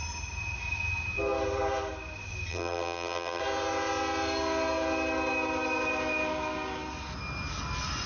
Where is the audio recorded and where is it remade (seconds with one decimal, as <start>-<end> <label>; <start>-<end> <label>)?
0.0-2.5 recorded; 2.5-3.4 remade; 3.4-8.1 recorded